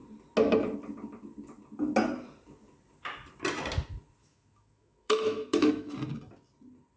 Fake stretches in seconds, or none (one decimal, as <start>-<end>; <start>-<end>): 4.2-5.9